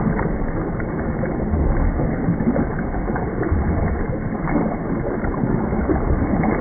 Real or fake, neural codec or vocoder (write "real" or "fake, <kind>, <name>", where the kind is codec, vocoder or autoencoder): real